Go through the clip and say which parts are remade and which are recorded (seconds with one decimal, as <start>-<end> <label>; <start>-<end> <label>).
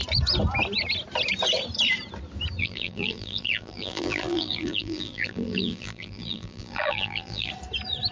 0.0-2.6 recorded; 2.6-7.5 remade; 7.5-8.1 recorded